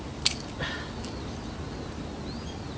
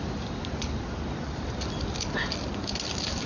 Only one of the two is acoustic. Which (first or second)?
first